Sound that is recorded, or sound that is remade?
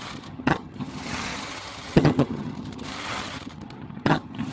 remade